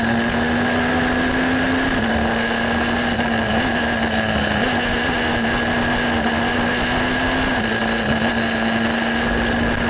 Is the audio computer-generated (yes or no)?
no